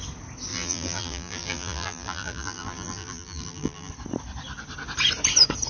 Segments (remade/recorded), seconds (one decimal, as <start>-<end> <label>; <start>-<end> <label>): 0.0-0.5 recorded; 0.5-3.9 remade; 3.9-5.7 recorded